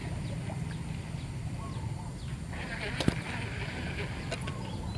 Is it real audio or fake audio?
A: real